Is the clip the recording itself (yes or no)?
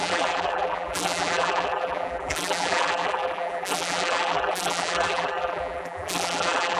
no